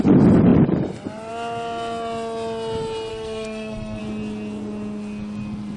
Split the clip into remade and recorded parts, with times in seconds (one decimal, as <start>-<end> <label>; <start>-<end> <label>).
0.0-3.1 recorded; 3.1-4.0 remade; 4.0-5.8 recorded